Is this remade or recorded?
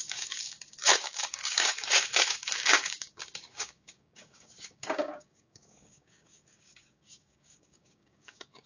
remade